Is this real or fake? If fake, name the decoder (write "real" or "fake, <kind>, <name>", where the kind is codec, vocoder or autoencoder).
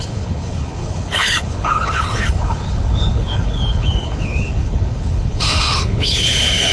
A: fake, codec, HILCodec